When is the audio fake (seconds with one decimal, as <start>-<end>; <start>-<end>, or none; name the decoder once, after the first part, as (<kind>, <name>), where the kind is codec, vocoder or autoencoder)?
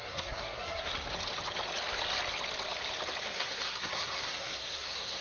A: 0.0-0.9 (codec, SNAC); 3.2-5.2